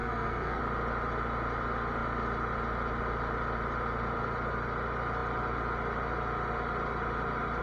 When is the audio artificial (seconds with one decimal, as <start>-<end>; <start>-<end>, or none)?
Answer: 0.0-0.6